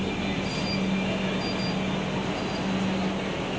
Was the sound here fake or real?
real